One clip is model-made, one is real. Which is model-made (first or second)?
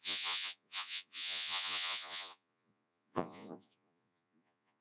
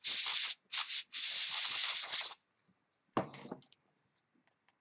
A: first